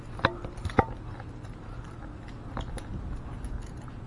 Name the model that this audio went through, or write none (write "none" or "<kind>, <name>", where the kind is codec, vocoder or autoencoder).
none